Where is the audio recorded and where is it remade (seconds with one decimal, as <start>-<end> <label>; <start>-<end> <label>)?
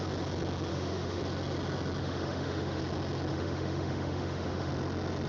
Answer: 0.0-0.7 recorded; 0.7-1.2 remade; 1.2-2.0 recorded; 2.0-2.8 remade; 2.8-3.3 recorded; 3.3-4.7 remade; 4.7-5.3 recorded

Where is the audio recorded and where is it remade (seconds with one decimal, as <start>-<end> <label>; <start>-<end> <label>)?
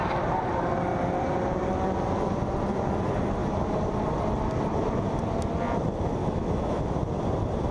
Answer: 0.0-6.2 recorded; 6.2-6.8 remade; 6.8-7.7 recorded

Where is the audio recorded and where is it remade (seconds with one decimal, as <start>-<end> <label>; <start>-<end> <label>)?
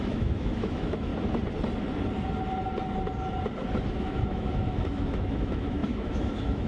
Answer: 0.0-1.1 remade; 1.1-4.0 recorded; 4.0-6.7 remade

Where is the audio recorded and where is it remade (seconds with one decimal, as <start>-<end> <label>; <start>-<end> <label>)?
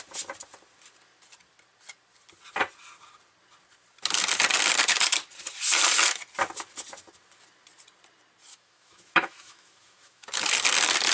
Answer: 0.0-8.5 recorded; 8.5-10.4 remade; 10.4-11.1 recorded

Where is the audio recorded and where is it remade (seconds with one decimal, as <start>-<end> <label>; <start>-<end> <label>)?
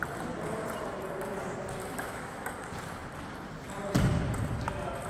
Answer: 0.0-1.8 recorded; 1.8-2.5 remade; 2.5-5.1 recorded